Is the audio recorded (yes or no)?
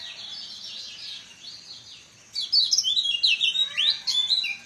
yes